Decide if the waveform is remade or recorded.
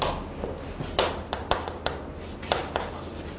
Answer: recorded